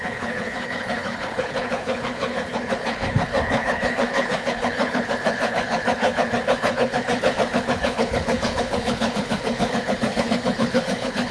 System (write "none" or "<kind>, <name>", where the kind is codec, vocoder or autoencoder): codec, HILCodec